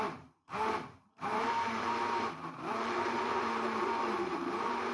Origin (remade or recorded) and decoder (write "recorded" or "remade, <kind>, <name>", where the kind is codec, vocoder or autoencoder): remade, vocoder, BigVGAN v2